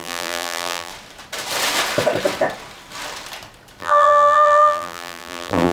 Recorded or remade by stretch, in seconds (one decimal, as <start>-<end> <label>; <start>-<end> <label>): 0.0-0.9 remade; 0.9-3.8 recorded; 3.8-5.7 remade